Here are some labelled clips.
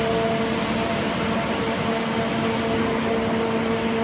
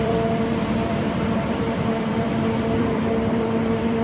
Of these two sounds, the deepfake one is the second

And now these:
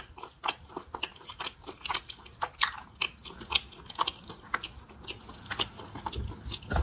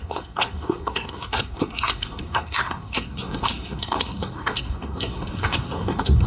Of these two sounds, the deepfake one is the second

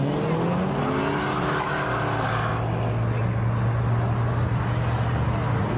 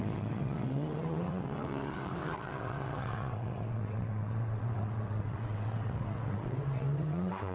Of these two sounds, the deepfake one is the second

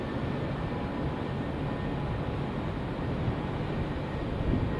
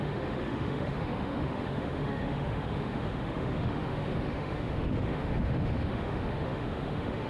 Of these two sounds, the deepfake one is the second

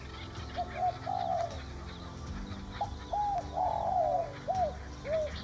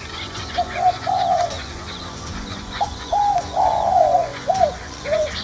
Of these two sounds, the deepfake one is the second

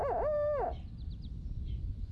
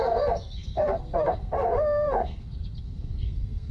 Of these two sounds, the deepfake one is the second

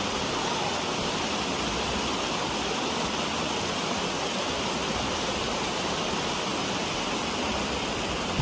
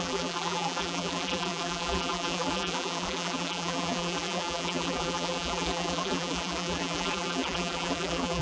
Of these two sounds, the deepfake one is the second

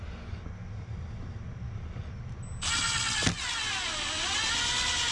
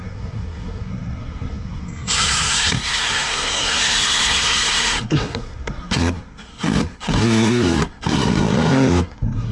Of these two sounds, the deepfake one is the second